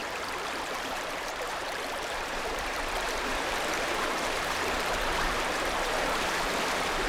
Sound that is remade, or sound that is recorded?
remade